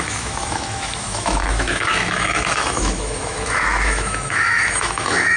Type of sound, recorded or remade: remade